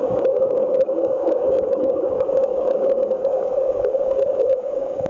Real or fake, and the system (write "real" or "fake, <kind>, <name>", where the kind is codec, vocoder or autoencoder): fake, codec, DAC